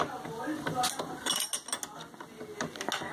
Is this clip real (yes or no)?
yes